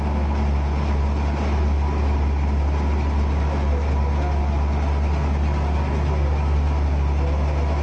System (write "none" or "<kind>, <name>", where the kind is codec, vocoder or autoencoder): none